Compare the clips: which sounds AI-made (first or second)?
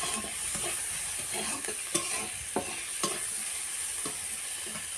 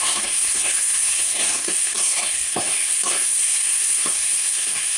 second